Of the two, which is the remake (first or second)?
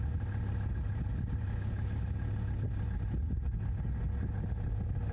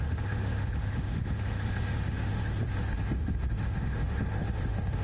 second